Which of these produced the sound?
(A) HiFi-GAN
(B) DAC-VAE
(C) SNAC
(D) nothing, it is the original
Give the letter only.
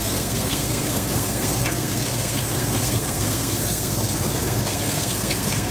C